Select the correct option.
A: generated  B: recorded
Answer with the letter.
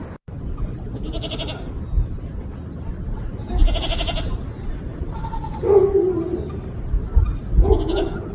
B